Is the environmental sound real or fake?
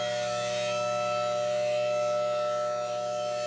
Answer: fake